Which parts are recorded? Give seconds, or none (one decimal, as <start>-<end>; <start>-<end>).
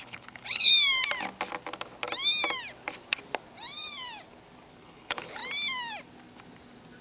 0.7-4.7; 5.4-7.0